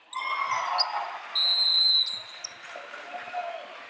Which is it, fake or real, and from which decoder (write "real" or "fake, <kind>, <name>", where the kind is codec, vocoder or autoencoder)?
real